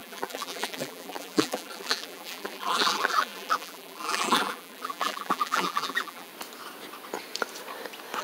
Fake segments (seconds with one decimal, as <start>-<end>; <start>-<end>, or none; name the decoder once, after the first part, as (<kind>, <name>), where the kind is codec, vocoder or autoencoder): 0.0-6.3 (vocoder, BigVGAN v2)